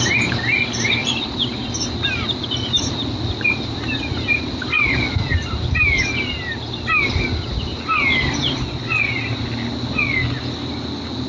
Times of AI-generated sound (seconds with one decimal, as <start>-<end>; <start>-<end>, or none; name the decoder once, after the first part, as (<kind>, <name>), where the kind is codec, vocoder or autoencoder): 1.0-5.6 (vocoder, BigVGAN v2)